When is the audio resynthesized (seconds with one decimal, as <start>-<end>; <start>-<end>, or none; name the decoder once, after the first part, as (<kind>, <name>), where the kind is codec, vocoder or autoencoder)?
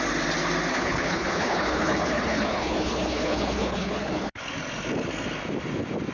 0.7-4.4 (codec, HILCodec)